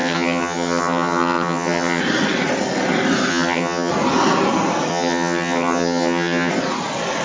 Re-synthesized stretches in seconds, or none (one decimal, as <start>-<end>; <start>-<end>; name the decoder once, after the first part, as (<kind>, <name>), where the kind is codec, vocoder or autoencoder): 0.0-2.0 (vocoder, HiFi-GAN); 3.3-3.9; 4.9-6.5